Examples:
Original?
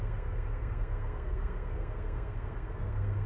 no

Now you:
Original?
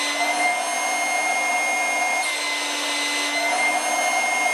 yes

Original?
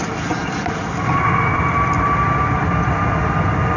yes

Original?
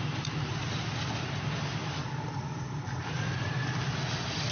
yes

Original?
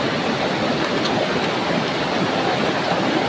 yes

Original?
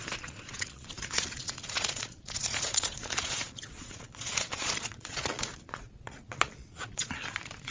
no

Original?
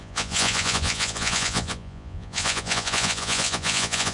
no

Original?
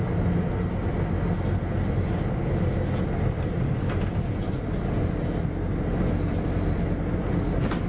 yes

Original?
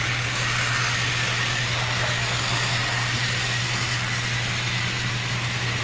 yes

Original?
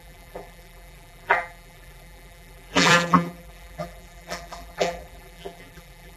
no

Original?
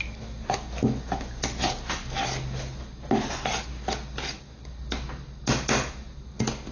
yes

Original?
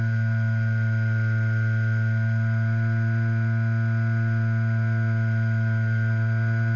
yes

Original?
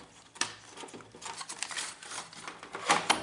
yes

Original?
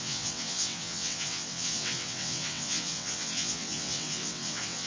no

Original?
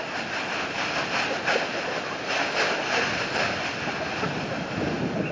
yes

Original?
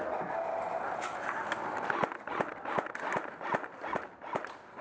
yes